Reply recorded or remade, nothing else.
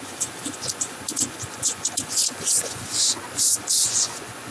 remade